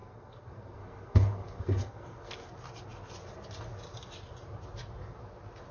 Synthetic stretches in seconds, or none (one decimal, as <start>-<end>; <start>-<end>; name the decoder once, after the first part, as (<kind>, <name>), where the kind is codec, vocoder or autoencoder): 0.0-2.5 (codec, SNAC)